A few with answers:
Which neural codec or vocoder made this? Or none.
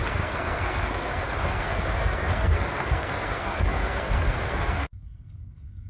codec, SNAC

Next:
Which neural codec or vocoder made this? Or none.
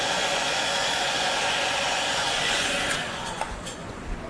vocoder, Vocos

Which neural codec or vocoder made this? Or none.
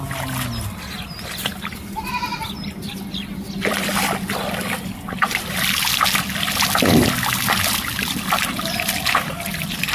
none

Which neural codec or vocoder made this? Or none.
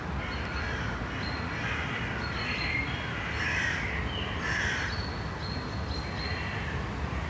none